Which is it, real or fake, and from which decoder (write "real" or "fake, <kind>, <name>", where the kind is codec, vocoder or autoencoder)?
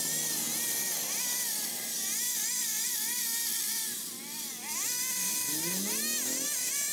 real